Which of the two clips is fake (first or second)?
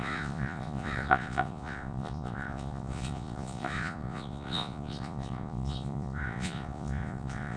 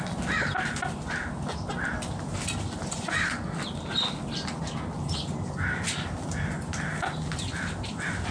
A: first